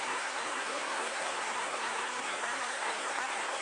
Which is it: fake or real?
fake